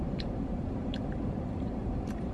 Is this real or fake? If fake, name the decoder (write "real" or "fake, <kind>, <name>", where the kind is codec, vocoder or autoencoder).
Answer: fake, vocoder, BigVGAN v2